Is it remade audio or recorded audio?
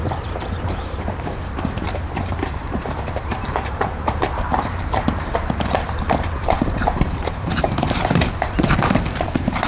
remade